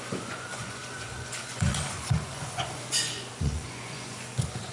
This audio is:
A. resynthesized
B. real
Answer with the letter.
A